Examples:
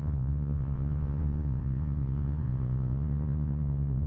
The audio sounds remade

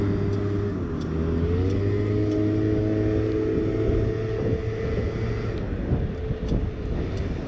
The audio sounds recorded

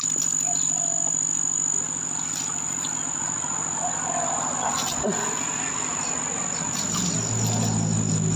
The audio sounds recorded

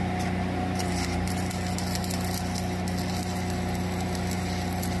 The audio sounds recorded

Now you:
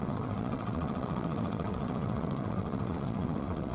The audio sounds remade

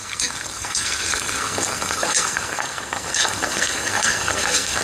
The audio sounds remade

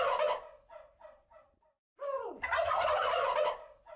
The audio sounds recorded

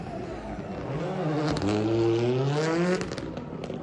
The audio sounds recorded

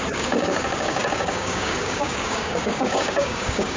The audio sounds remade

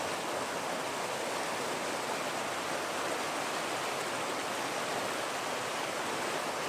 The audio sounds recorded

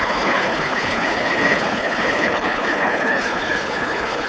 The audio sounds remade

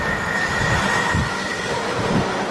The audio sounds recorded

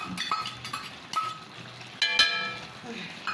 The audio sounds recorded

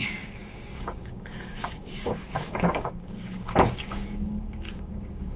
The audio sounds remade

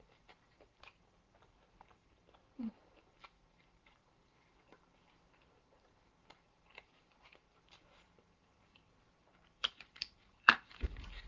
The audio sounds remade